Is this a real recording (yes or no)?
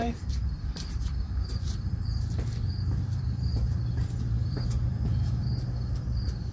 no